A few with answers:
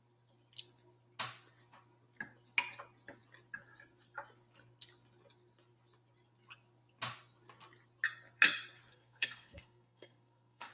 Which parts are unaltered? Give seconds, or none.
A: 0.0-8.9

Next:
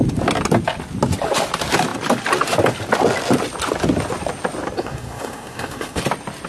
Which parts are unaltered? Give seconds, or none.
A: 0.0-4.8; 6.0-6.5